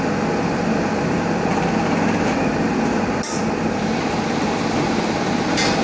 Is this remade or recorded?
recorded